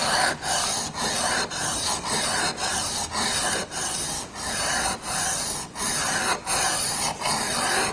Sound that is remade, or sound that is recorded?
recorded